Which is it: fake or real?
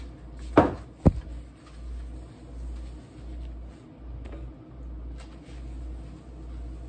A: real